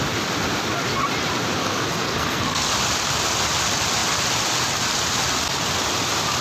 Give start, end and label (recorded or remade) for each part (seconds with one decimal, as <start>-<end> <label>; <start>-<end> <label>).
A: 0.0-1.6 recorded; 1.6-2.7 remade; 2.7-6.4 recorded